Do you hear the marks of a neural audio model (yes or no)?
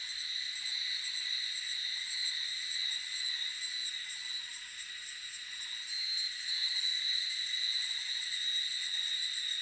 no